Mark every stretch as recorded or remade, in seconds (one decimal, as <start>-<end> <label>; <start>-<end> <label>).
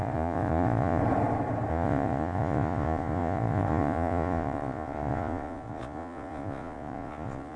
0.0-1.0 remade; 1.0-1.7 recorded; 1.7-7.6 remade